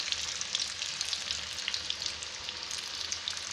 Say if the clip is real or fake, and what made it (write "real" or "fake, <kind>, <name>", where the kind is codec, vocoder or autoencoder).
real